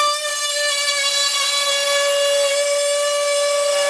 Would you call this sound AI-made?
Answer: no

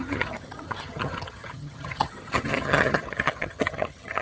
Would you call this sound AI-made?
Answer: yes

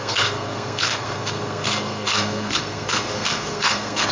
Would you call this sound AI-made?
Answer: yes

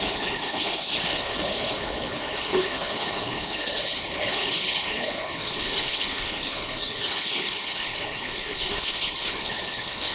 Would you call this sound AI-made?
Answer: yes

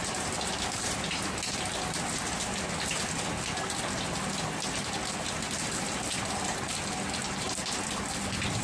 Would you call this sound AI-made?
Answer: no